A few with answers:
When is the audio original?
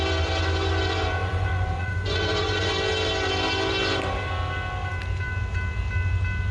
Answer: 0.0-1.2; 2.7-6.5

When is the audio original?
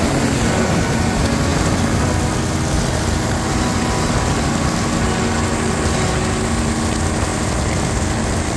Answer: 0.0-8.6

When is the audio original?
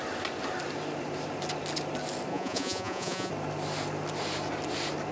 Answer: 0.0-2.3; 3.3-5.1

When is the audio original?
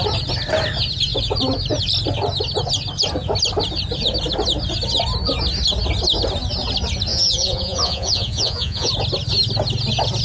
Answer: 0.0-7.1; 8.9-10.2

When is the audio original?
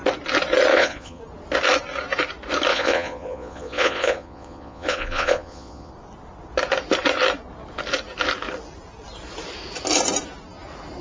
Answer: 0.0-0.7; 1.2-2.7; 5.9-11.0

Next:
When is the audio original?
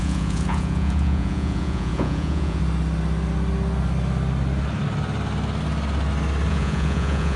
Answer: 2.6-6.5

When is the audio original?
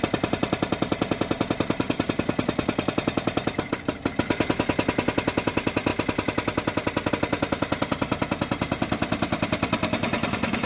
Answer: 0.0-10.7